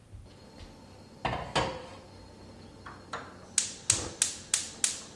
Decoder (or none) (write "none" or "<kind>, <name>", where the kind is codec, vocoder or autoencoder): none